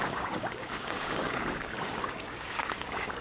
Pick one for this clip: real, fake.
fake